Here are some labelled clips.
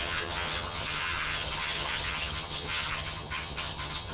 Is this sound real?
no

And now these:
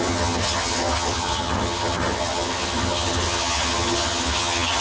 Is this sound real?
no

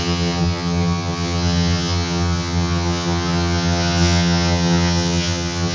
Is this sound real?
no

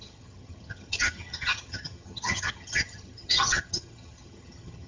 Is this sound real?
no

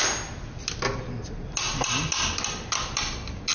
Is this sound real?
yes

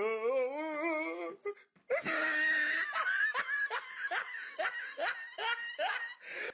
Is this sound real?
yes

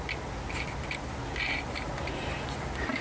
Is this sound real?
yes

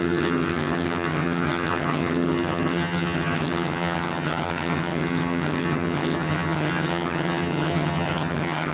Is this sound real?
no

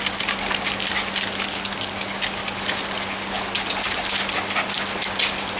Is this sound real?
yes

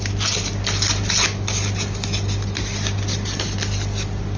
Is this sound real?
yes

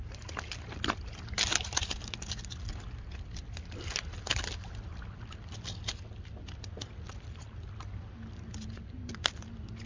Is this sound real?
yes